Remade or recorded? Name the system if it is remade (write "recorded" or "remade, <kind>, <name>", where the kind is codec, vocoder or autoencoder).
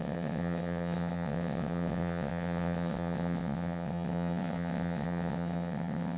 remade, vocoder, WaveNeXt